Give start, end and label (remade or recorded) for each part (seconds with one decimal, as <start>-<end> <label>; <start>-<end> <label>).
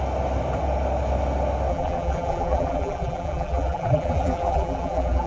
0.0-1.7 recorded; 1.7-5.3 remade